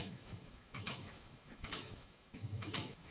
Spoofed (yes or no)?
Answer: yes